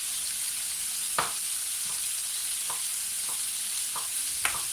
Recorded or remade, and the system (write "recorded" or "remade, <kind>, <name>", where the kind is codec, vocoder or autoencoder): recorded